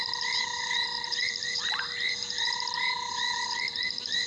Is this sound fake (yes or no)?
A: yes